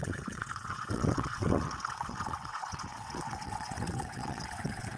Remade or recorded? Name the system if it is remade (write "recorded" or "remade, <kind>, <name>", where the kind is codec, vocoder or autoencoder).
remade, vocoder, WaveNeXt